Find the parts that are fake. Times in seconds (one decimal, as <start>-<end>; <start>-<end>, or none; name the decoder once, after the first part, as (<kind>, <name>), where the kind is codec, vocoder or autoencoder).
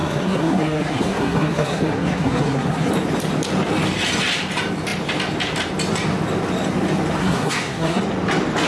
0.0-2.9 (codec, SNAC); 7.2-8.0